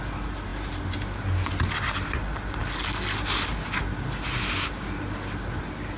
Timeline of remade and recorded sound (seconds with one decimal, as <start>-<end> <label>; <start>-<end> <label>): 0.0-6.0 recorded